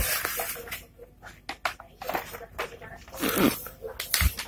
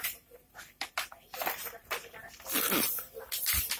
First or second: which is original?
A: first